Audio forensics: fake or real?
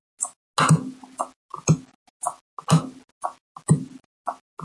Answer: real